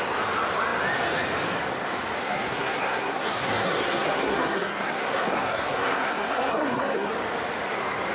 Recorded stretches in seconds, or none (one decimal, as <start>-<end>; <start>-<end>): 0.0-2.2; 7.1-8.1